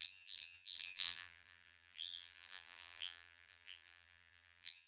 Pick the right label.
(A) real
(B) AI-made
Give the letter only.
B